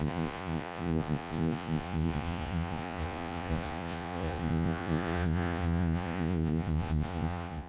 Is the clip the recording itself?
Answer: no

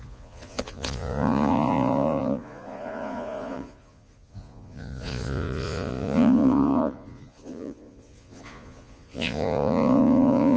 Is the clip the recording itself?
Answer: no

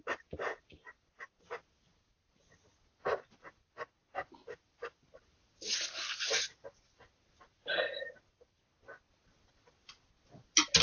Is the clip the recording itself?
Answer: yes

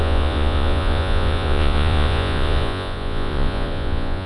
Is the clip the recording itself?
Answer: no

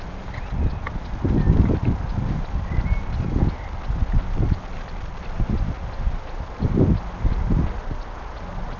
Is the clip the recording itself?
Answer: yes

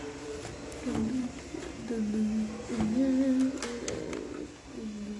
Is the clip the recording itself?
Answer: yes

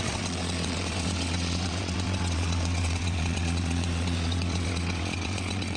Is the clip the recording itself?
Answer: no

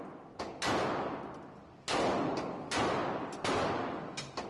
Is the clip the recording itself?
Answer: yes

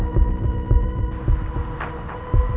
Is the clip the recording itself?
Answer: yes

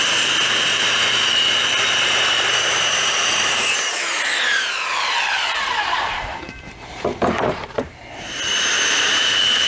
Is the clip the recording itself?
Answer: no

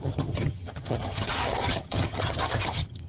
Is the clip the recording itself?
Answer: no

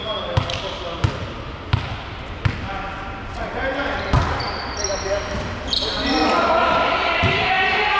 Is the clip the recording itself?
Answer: yes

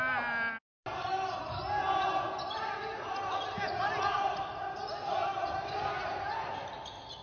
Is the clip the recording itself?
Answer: yes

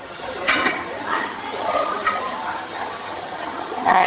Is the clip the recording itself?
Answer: no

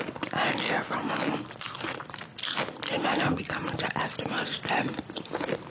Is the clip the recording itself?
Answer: yes